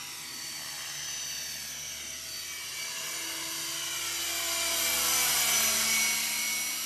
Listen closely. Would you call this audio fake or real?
real